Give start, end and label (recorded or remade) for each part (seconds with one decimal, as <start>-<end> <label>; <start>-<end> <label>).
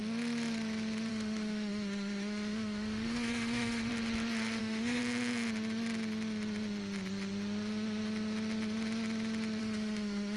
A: 0.0-1.1 recorded; 1.1-3.9 remade; 3.9-4.6 recorded; 4.6-5.0 remade; 5.0-9.6 recorded; 9.6-10.4 remade